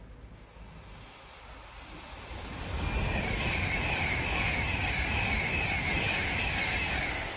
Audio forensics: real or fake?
real